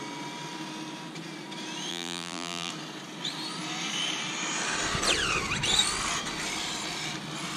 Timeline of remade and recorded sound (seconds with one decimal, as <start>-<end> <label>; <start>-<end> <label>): 0.0-1.9 recorded; 1.9-2.7 remade; 2.7-7.6 recorded